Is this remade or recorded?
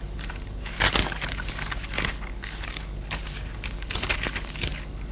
remade